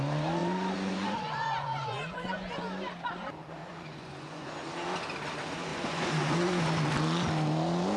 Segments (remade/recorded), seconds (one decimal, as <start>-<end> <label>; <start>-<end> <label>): 0.0-0.4 recorded; 0.4-2.5 remade; 2.5-3.6 recorded; 3.6-4.6 remade; 4.6-5.7 recorded; 5.7-6.6 remade; 6.6-8.0 recorded